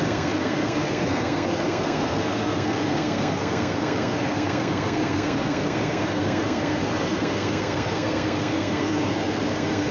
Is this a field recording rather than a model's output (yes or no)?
no